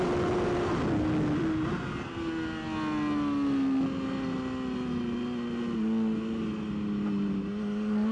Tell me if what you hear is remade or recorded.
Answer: recorded